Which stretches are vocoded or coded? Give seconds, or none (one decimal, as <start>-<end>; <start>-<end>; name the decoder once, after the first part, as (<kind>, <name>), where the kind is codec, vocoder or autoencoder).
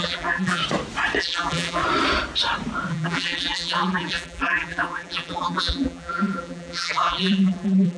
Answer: 0.0-0.6 (vocoder, BigVGAN v2); 1.2-1.8; 2.9-8.0